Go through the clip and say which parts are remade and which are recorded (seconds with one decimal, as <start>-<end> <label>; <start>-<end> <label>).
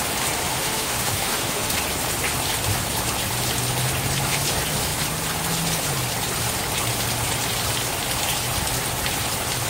0.0-0.5 recorded; 0.5-1.8 remade; 1.8-9.7 recorded